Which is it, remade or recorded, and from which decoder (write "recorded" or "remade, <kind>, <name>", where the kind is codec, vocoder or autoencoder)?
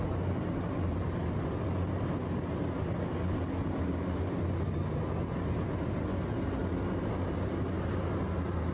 recorded